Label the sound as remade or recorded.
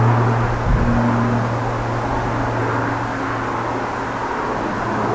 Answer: recorded